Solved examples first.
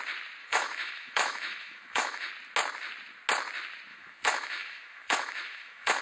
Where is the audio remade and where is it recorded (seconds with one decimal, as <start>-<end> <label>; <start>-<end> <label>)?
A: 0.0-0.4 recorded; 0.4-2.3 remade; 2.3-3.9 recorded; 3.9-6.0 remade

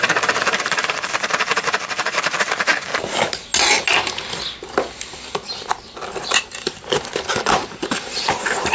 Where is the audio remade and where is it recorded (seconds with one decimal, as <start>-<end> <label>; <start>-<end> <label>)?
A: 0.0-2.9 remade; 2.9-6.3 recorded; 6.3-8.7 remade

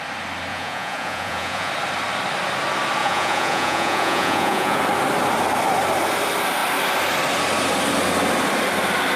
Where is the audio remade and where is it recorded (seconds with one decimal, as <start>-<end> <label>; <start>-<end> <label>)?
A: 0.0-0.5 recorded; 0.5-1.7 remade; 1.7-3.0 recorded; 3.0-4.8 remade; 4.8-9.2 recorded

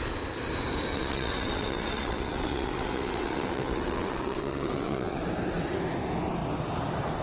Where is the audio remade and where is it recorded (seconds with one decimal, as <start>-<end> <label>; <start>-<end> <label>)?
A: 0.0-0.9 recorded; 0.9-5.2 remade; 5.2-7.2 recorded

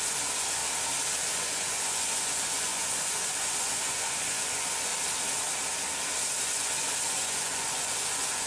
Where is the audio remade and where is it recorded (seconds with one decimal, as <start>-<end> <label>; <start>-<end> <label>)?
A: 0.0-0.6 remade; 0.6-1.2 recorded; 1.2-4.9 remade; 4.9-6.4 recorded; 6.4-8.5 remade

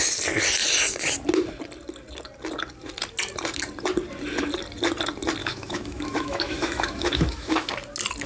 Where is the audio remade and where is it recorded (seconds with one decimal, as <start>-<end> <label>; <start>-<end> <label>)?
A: 0.0-5.4 recorded; 5.4-7.7 remade; 7.7-8.3 recorded

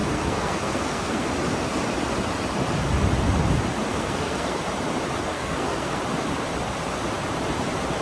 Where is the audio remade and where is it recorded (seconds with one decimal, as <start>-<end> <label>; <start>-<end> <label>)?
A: 0.0-1.3 remade; 1.3-3.9 recorded; 3.9-4.6 remade; 4.6-5.3 recorded; 5.3-6.0 remade; 6.0-8.0 recorded